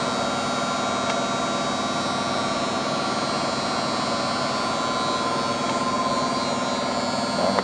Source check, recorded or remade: recorded